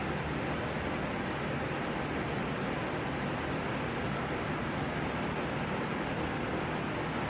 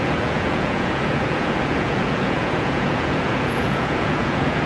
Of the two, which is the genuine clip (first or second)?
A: first